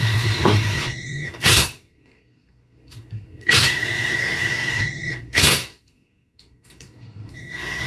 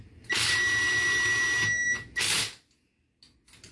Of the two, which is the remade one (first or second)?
first